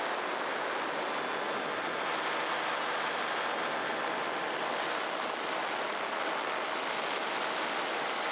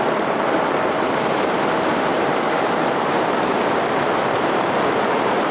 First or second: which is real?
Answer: first